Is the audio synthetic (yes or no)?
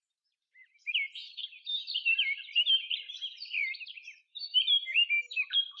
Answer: yes